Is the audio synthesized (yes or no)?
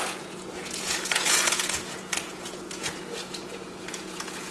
yes